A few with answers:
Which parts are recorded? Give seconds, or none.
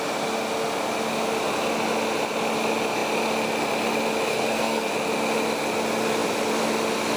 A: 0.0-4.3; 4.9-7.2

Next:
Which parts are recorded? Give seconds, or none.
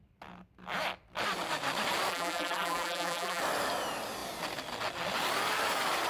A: 0.0-2.1; 3.4-6.1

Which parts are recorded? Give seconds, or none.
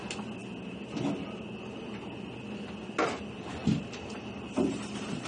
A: 0.0-3.6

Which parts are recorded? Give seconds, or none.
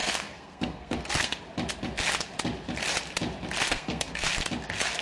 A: 1.4-3.7; 4.3-5.0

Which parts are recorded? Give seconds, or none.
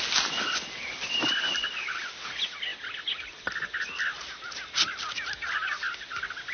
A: 0.0-6.5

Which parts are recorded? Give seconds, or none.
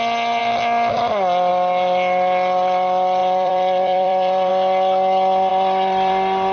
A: 0.0-3.2; 4.5-5.5; 6.1-6.5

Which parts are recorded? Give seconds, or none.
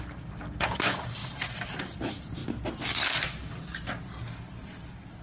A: 2.4-4.2